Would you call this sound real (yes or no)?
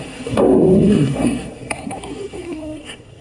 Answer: no